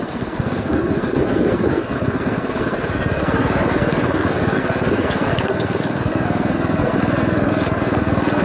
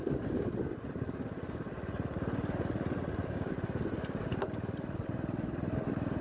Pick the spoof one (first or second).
first